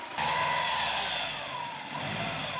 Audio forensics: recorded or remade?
recorded